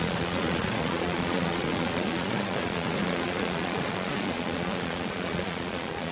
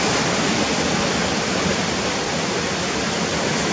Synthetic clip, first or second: first